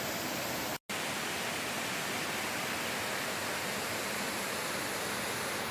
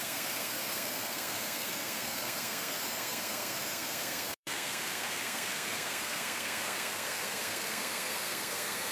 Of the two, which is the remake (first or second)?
second